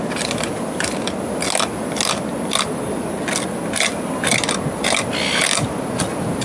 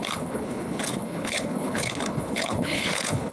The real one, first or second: first